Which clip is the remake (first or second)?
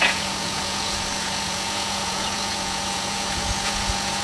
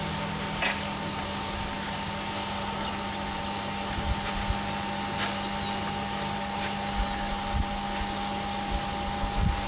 first